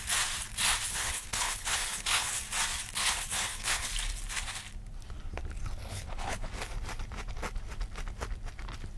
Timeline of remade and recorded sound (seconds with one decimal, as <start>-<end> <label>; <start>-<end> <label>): 0.0-0.9 recorded; 0.9-2.4 remade; 2.4-3.0 recorded; 3.0-3.9 remade; 3.9-5.9 recorded; 5.9-6.5 remade; 6.5-9.0 recorded